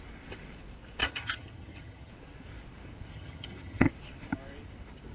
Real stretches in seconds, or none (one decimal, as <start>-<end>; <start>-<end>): 0.0-1.0; 2.1-3.1; 3.9-5.1